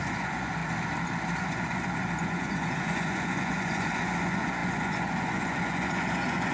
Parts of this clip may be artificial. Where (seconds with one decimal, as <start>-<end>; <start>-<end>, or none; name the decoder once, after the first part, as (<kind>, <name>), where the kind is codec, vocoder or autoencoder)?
0.0-0.6 (vocoder, Vocos); 1.4-6.5